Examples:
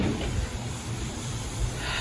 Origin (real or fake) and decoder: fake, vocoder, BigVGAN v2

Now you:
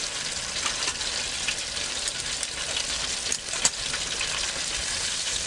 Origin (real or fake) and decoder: real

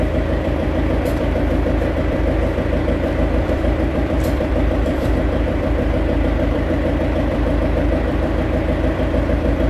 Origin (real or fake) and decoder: fake, vocoder, BigVGAN v2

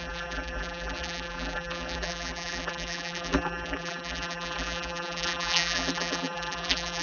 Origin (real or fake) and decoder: fake, vocoder, BigVGAN v2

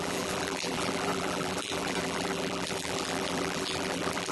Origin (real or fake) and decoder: fake, vocoder, BigVGAN v2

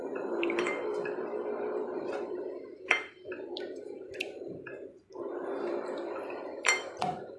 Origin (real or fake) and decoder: fake, vocoder, BigVGAN v2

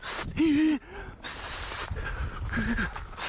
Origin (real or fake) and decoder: real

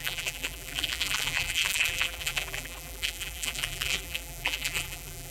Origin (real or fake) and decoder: fake, vocoder, BigVGAN v2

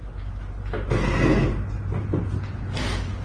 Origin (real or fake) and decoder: real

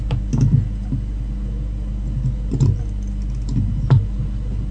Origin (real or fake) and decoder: real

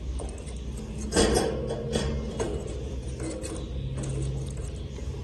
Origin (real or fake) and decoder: real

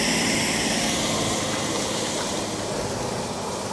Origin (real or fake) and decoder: real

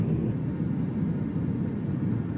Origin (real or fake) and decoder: real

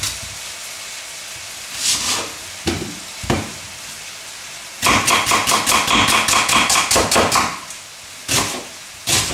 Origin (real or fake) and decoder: real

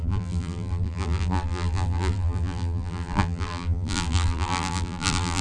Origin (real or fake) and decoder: fake, vocoder, BigVGAN v2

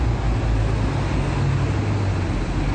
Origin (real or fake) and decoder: real